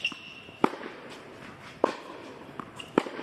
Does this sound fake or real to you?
fake